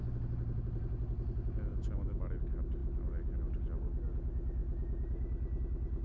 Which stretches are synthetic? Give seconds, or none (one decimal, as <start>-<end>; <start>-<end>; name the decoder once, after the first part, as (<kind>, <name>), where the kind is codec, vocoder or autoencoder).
1.7-2.2 (autoencoder, DAC-VAE)

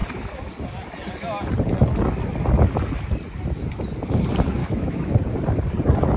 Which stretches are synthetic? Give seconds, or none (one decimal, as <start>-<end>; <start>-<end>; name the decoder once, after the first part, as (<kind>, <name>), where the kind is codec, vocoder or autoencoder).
4.6-5.1 (autoencoder, DAC-VAE)

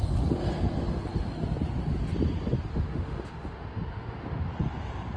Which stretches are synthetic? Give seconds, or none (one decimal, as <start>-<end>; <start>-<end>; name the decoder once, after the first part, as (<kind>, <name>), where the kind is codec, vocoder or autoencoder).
2.7-4.5 (autoencoder, DAC-VAE)

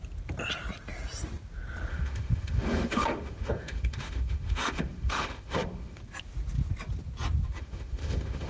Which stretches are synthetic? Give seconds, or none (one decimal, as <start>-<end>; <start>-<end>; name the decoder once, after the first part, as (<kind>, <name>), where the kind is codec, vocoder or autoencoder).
1.9-6.0 (autoencoder, DAC-VAE); 7.6-8.5